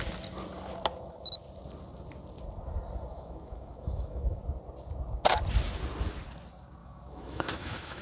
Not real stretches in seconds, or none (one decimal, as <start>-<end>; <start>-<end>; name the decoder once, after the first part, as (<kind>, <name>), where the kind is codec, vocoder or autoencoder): 3.1-4.4 (autoencoder, DAC-VAE); 6.8-8.0